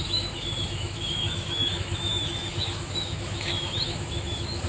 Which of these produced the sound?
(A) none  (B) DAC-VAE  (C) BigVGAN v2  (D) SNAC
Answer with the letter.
B